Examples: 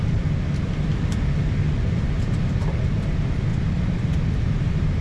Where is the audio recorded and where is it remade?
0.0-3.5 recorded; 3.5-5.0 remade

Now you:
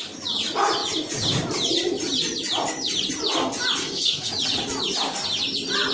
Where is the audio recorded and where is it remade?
0.0-3.8 recorded; 3.8-4.3 remade; 4.3-5.9 recorded

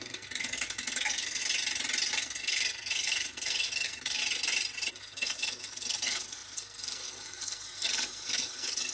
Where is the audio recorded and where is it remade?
0.0-1.4 remade; 1.4-2.1 recorded; 2.1-4.2 remade; 4.2-4.9 recorded; 4.9-8.9 remade

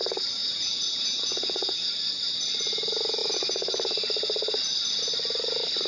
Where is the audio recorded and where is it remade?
0.0-0.4 recorded; 0.4-1.9 remade; 1.9-5.9 recorded

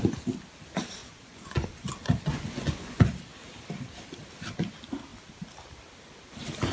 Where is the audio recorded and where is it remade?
0.0-1.0 recorded; 1.0-1.9 remade; 1.9-2.3 recorded; 2.3-3.0 remade; 3.0-6.7 recorded